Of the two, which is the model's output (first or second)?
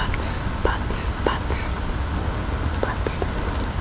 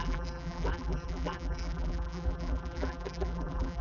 second